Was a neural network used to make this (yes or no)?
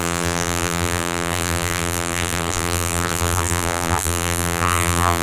yes